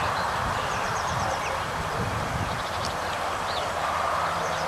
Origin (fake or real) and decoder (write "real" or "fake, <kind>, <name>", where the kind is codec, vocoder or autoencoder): fake, vocoder, BigVGAN v2